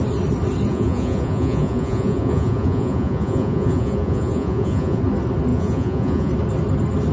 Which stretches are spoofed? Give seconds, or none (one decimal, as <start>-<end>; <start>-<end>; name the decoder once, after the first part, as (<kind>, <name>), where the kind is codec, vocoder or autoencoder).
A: 0.7-5.0 (vocoder, Vocos); 5.5-6.3

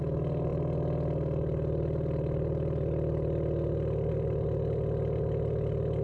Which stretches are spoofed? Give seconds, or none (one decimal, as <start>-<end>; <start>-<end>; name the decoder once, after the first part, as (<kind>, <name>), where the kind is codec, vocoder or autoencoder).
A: none